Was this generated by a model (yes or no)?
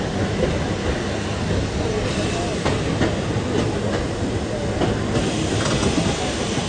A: no